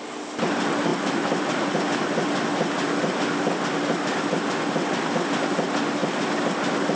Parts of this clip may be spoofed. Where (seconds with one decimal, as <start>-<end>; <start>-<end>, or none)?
none